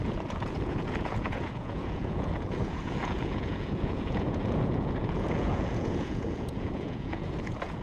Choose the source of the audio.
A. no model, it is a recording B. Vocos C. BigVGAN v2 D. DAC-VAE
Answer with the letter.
B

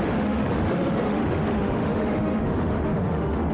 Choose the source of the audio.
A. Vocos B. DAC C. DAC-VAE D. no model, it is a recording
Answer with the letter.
C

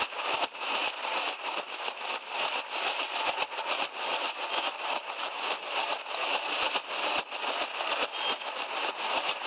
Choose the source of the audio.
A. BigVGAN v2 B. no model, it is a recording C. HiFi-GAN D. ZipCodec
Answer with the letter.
B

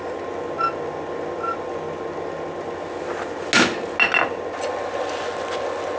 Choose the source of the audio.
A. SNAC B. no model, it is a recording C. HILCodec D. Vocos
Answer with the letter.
B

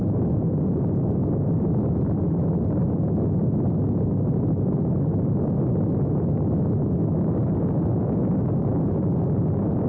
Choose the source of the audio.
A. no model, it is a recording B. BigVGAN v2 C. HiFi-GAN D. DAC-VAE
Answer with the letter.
A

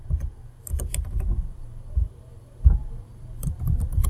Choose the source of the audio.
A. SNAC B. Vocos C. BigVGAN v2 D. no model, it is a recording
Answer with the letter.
C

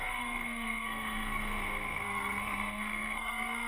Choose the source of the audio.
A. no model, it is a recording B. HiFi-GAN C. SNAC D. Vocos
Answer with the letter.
C